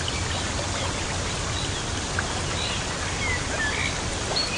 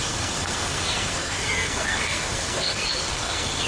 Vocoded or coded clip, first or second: second